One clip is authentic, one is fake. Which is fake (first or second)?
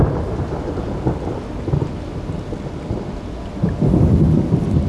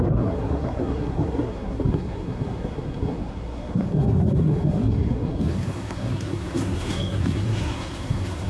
second